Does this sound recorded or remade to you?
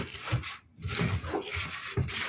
recorded